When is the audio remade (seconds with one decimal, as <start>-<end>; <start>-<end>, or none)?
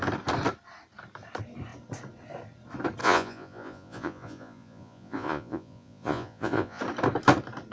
3.0-6.8